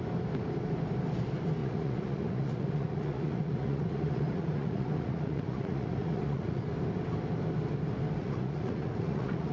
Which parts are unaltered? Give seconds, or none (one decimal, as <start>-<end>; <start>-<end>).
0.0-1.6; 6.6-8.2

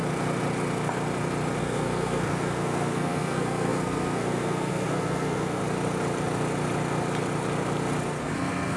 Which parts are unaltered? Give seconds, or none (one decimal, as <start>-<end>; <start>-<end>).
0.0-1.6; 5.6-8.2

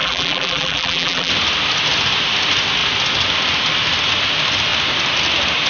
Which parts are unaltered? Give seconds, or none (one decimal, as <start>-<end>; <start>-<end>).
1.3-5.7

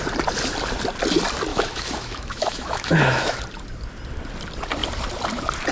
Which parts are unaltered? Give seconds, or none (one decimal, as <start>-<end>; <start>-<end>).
0.0-1.5; 3.4-5.7